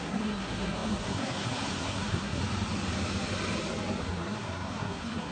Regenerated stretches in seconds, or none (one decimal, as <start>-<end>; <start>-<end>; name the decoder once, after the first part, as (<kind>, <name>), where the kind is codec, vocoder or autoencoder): 0.0-2.4 (codec, SNAC); 4.0-5.3